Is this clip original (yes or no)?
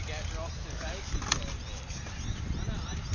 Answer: yes